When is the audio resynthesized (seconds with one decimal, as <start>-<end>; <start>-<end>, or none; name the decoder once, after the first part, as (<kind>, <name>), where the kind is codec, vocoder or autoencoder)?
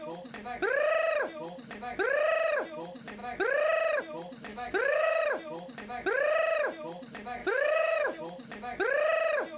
4.5-5.2 (codec, DAC); 7.4-8.2